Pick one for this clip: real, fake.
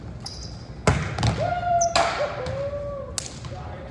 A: real